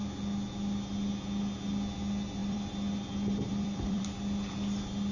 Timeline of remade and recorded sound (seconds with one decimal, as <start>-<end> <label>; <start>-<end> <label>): 0.0-2.4 recorded; 2.4-4.0 remade; 4.0-5.1 recorded